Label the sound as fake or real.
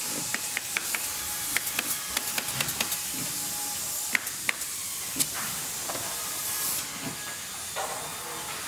real